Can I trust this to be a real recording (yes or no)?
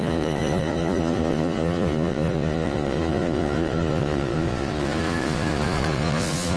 no